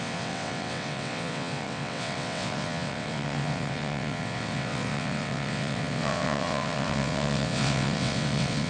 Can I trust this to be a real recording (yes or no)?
no